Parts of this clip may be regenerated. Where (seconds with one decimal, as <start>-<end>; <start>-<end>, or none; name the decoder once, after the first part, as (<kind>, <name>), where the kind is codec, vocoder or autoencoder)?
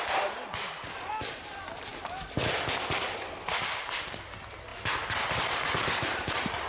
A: 0.0-1.9 (vocoder, BigVGAN v2); 2.7-6.7